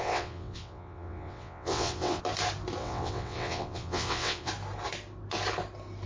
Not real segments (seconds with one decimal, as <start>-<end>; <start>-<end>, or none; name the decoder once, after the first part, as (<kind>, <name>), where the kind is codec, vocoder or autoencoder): 0.0-2.2 (vocoder, WaveNeXt); 2.8-4.5